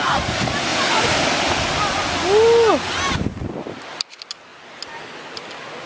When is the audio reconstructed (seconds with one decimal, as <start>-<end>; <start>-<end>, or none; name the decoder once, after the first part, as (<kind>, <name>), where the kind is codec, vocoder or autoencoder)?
0.7-1.6 (vocoder, BigVGAN v2)